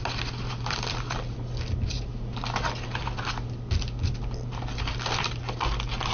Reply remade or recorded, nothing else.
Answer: recorded